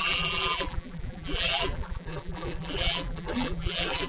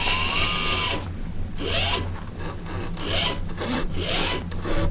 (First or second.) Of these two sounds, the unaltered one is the second